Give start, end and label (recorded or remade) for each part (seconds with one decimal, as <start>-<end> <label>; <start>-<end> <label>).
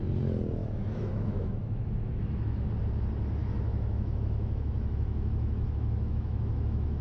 0.0-0.6 recorded; 0.6-2.7 remade; 2.7-3.4 recorded; 3.4-7.0 remade